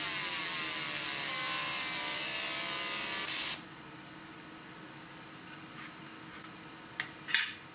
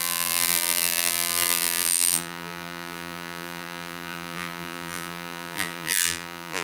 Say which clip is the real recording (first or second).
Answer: first